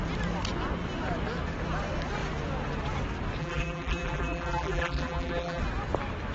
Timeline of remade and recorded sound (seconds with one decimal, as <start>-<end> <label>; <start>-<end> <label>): 0.0-3.4 recorded; 3.4-5.6 remade; 5.6-6.3 recorded